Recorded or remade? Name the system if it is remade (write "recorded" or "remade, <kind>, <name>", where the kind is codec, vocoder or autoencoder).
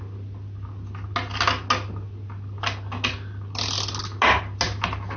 recorded